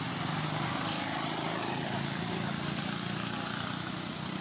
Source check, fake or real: real